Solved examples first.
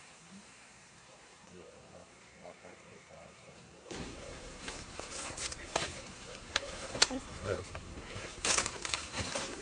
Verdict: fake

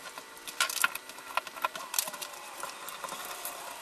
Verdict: real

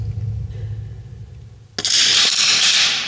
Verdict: real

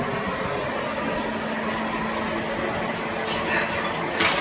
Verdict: real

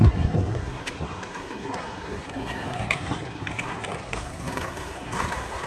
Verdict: fake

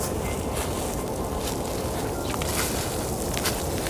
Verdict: real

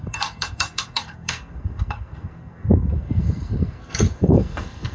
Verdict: fake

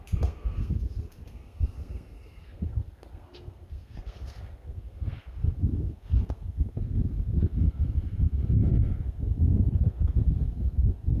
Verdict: fake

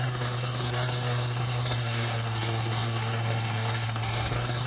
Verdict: fake